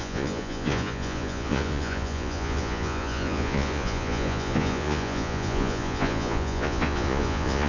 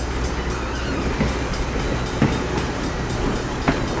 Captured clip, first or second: second